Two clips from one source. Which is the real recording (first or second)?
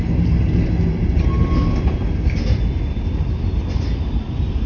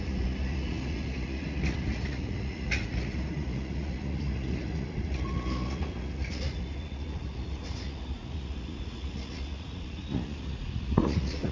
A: first